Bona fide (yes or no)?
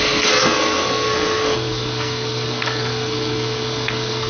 no